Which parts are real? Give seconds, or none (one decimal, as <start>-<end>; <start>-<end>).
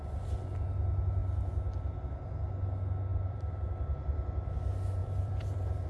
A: 0.0-3.1; 3.7-5.0